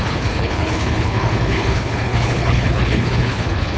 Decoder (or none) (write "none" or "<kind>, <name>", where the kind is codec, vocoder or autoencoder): codec, HILCodec